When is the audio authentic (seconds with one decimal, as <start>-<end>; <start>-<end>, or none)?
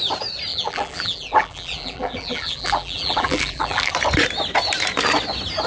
0.0-0.5; 3.9-5.7